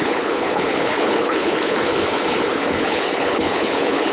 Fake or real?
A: fake